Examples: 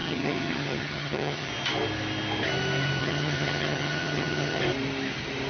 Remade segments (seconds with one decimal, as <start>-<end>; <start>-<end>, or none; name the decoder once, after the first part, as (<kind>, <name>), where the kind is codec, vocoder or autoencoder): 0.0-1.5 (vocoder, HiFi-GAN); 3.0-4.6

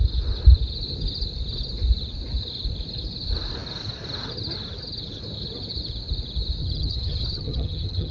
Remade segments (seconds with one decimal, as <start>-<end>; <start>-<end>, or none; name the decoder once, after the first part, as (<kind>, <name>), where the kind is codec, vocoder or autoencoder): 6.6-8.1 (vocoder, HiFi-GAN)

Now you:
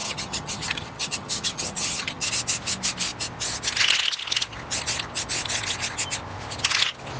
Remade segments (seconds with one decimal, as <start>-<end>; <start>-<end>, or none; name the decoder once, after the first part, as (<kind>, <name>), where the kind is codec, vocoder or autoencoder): 0.0-2.3 (vocoder, HiFi-GAN)

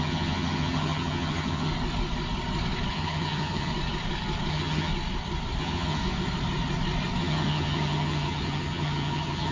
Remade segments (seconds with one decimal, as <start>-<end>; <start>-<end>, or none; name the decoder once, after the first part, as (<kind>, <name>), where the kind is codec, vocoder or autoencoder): 0.0-1.7 (vocoder, HiFi-GAN); 2.9-3.7; 4.5-4.9; 5.6-6.0; 7.2-9.5